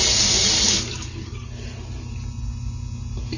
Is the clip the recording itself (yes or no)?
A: yes